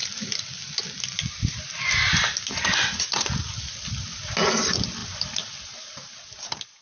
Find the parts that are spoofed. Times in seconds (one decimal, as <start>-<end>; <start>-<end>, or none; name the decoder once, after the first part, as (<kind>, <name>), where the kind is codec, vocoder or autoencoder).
none